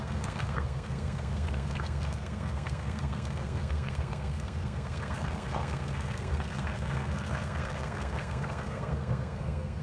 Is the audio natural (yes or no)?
no